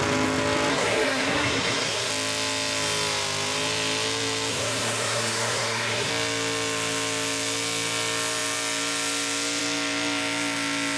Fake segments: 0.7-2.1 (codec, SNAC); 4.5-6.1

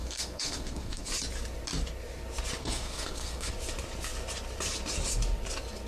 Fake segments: 0.0-1.1 (codec, SNAC); 2.6-3.5